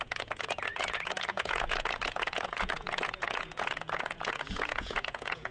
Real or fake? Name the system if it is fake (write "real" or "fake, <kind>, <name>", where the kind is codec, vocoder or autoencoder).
fake, vocoder, Vocos